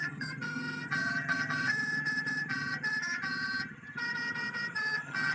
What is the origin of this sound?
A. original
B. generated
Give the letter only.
B